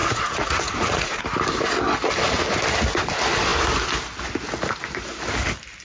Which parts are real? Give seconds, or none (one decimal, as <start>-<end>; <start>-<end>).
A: 1.2-5.8